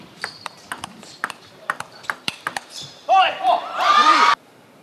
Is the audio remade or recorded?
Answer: remade